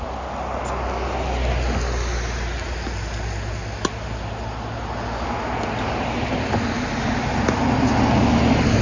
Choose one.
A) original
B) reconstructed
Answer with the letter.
A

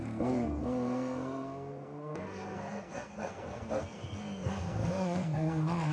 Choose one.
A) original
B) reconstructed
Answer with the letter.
B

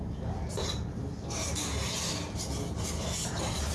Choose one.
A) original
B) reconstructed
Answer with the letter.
A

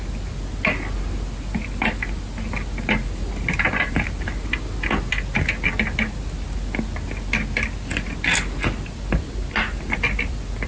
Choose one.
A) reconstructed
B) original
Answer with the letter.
B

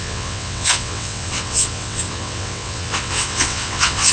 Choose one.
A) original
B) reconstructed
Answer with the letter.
B